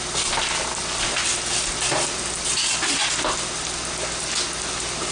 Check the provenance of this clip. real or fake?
real